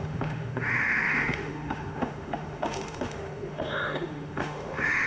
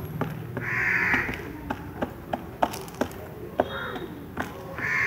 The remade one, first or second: first